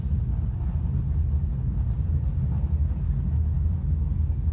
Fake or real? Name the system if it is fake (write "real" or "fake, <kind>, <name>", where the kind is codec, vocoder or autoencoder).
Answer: real